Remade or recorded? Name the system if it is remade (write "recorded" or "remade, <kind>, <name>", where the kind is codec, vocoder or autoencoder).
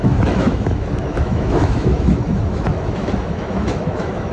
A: remade, autoencoder, DAC-VAE